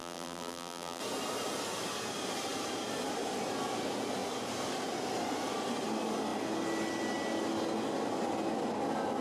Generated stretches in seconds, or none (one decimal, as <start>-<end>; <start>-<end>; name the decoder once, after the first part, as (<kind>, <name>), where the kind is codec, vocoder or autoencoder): 0.0-1.0 (vocoder, BigVGAN v2)